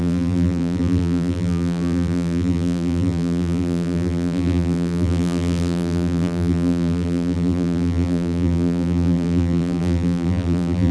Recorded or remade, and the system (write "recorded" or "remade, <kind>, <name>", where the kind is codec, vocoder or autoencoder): remade, vocoder, BigVGAN v2